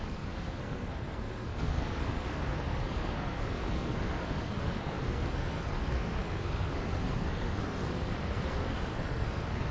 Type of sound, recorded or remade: remade